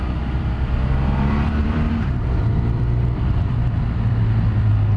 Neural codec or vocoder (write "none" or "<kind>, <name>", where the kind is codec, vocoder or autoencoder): vocoder, BigVGAN v2